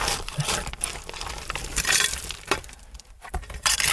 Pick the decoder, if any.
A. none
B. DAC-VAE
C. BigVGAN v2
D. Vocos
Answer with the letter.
C